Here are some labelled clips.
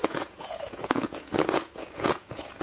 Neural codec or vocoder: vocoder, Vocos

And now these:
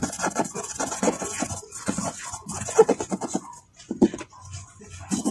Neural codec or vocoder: vocoder, Vocos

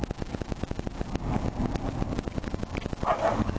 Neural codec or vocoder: none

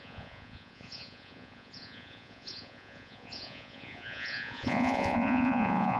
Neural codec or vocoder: vocoder, Vocos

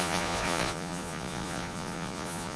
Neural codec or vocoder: vocoder, Vocos